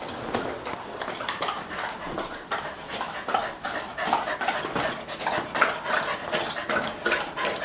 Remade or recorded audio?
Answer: recorded